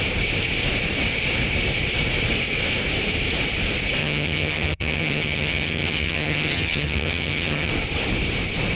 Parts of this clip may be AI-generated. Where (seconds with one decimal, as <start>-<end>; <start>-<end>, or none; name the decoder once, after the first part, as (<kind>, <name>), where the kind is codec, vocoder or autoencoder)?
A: 4.0-7.7 (vocoder, HiFi-GAN)